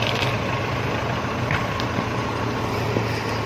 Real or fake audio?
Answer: fake